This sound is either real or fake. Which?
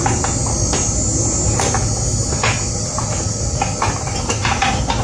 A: real